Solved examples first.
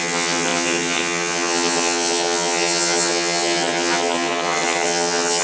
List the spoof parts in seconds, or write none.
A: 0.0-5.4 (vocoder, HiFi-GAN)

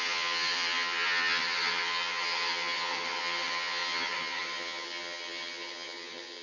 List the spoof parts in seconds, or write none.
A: 0.0-6.4 (vocoder, HiFi-GAN)